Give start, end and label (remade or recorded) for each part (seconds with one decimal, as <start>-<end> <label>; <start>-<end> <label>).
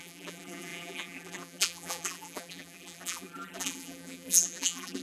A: 0.0-5.0 remade